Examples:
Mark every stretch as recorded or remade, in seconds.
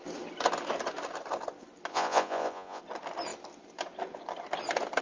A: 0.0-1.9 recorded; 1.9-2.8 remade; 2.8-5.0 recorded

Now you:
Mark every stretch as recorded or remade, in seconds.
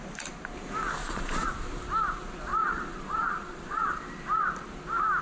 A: 0.0-1.0 recorded; 1.0-1.5 remade; 1.5-2.5 recorded; 2.5-4.0 remade; 4.0-5.2 recorded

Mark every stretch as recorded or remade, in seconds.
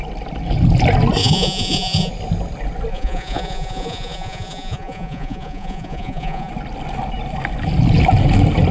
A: 0.0-1.2 recorded; 1.2-2.1 remade; 2.1-2.9 recorded; 2.9-6.5 remade; 6.5-8.7 recorded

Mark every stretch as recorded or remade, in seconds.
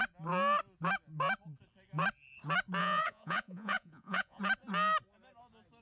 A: 0.0-2.8 recorded; 2.8-4.4 remade; 4.4-5.8 recorded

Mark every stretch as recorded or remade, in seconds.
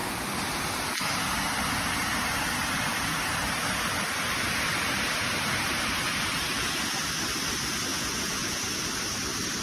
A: 0.0-7.9 recorded; 7.9-8.6 remade; 8.6-9.6 recorded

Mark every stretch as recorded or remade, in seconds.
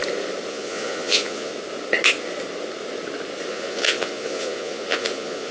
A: 0.0-0.5 recorded; 0.5-1.5 remade; 1.5-3.5 recorded; 3.5-5.5 remade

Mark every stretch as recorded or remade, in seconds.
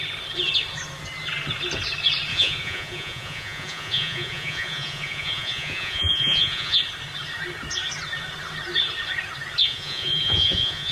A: 0.0-2.3 recorded; 2.3-6.8 remade; 6.8-9.6 recorded; 9.6-10.9 remade